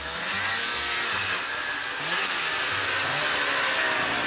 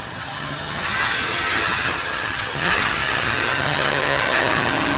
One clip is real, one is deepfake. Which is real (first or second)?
first